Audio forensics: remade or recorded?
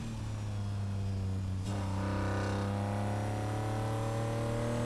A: recorded